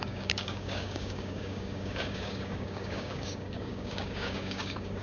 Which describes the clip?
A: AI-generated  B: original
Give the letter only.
A